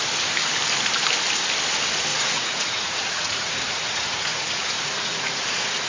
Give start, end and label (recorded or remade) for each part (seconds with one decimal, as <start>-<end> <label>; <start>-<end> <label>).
0.0-2.1 recorded; 2.1-5.9 remade

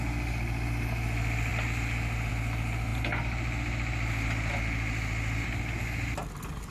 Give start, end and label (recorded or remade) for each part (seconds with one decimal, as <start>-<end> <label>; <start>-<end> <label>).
0.0-6.7 recorded

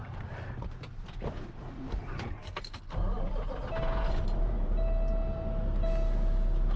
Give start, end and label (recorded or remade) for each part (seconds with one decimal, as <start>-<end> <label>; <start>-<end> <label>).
0.0-6.8 recorded

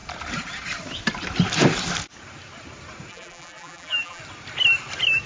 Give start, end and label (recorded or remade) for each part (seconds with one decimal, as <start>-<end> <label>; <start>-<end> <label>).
0.0-3.1 recorded; 3.1-4.2 remade; 4.2-5.3 recorded

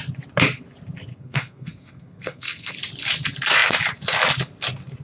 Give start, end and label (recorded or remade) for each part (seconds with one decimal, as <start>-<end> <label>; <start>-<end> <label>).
0.0-1.1 recorded; 1.1-2.7 remade; 2.7-5.0 recorded

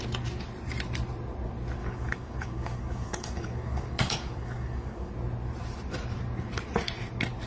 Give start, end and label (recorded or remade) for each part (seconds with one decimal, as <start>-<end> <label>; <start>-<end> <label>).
0.0-1.8 recorded; 1.8-5.1 remade; 5.1-7.5 recorded

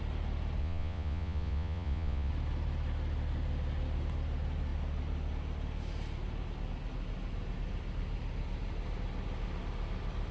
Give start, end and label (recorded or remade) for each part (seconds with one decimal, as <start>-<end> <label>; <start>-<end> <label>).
0.0-0.6 recorded; 0.6-2.3 remade; 2.3-10.3 recorded

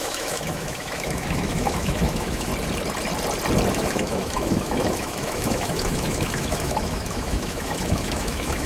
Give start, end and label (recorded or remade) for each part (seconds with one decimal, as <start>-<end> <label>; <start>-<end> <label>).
0.0-2.5 remade; 2.5-3.7 recorded; 3.7-8.7 remade